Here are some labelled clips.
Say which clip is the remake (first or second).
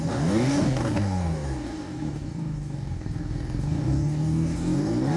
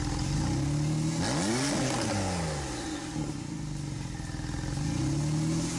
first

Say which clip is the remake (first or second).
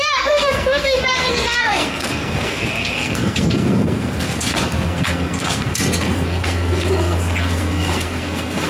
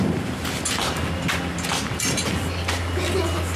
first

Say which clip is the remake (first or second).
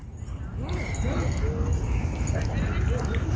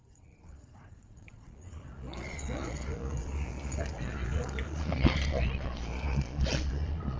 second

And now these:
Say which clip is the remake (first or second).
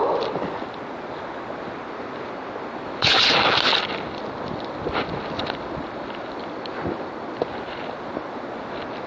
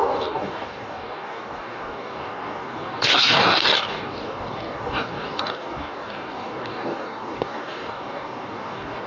second